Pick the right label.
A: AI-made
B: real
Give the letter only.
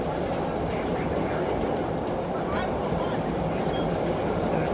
B